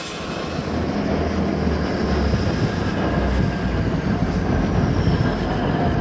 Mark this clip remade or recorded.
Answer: recorded